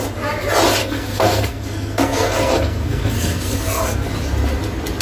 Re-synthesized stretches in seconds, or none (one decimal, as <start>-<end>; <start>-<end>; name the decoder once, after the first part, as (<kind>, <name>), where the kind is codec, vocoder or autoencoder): 0.8-3.8 (codec, SNAC)